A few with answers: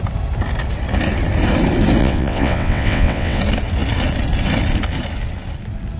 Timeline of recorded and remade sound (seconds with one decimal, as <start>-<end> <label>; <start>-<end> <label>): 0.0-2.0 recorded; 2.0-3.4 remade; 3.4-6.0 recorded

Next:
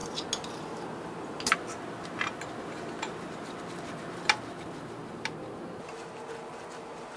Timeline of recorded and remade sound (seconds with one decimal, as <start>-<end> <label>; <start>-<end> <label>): 0.0-7.2 recorded

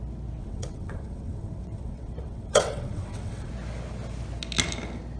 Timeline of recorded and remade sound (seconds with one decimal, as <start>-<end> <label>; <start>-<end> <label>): 0.0-0.4 recorded; 0.4-3.5 remade; 3.5-5.2 recorded